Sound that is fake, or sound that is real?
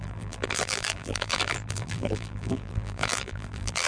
fake